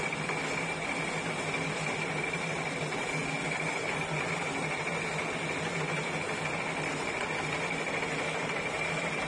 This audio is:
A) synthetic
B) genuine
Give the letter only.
B